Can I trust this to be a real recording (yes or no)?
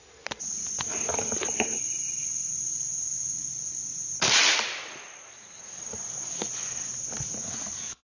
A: yes